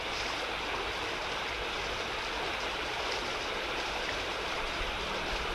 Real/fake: real